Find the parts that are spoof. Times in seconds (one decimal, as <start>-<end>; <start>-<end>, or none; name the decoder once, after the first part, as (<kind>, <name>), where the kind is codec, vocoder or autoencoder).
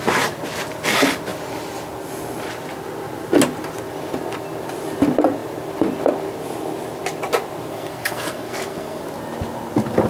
7.7-9.0 (codec, SNAC)